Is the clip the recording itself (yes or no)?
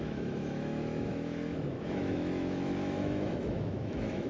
no